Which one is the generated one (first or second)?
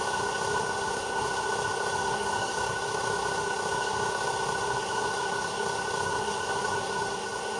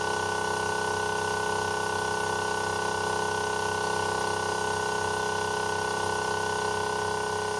first